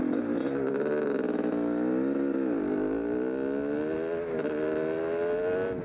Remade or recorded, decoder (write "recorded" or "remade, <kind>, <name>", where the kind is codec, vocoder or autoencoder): recorded